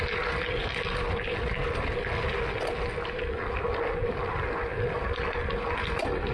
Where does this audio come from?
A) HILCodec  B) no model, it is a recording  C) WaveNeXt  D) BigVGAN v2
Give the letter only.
B